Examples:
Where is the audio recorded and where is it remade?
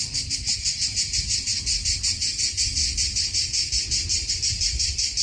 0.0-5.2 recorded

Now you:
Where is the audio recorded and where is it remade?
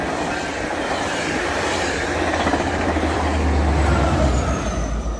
0.0-0.5 recorded; 0.5-3.2 remade; 3.2-5.2 recorded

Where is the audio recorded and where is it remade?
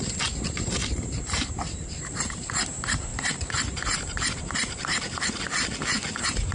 0.0-0.8 recorded; 0.8-2.7 remade; 2.7-3.1 recorded; 3.1-5.4 remade; 5.4-6.5 recorded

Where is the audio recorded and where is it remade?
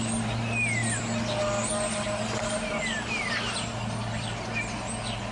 0.0-5.3 recorded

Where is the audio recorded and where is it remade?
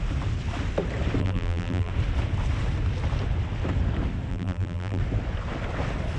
0.0-1.2 recorded; 1.2-1.9 remade; 1.9-4.3 recorded; 4.3-5.0 remade; 5.0-6.2 recorded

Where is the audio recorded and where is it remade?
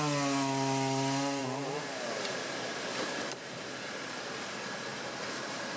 0.0-1.4 recorded; 1.4-3.7 remade; 3.7-4.9 recorded; 4.9-5.8 remade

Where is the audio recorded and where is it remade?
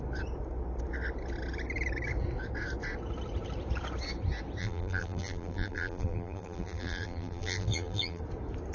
0.0-4.6 recorded; 4.6-8.2 remade; 8.2-8.7 recorded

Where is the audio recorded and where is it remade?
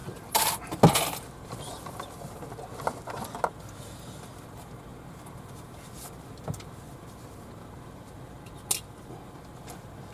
0.0-0.6 remade; 0.6-4.9 recorded; 4.9-7.5 remade; 7.5-10.1 recorded